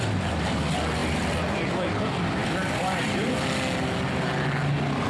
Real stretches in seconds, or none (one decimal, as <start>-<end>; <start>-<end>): 0.0-1.0; 1.9-2.4; 3.3-5.1